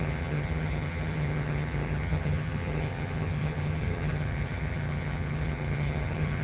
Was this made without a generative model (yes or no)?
no